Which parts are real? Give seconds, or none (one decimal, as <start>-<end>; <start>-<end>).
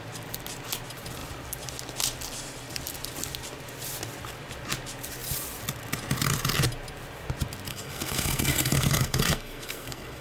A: 0.0-7.7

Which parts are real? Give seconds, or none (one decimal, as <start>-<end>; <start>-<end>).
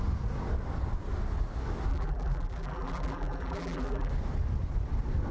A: 0.0-1.9; 4.1-5.3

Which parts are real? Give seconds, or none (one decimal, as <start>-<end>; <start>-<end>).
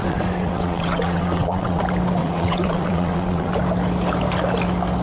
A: 1.8-2.2; 3.5-5.0